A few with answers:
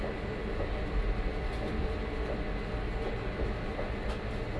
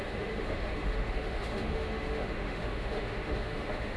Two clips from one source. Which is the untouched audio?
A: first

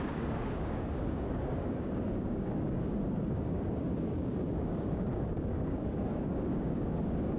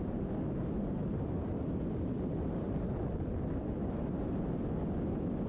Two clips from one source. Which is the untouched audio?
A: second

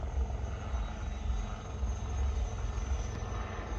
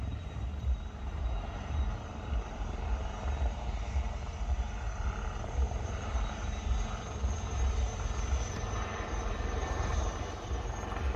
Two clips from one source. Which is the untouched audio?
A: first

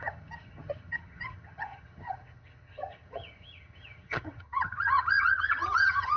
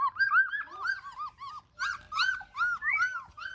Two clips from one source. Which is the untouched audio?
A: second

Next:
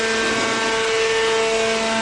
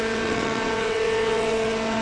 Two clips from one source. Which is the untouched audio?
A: first